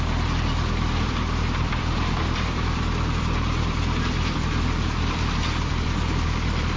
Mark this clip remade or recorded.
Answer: remade